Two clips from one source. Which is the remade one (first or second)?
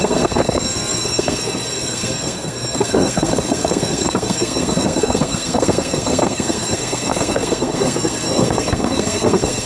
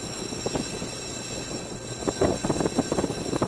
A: first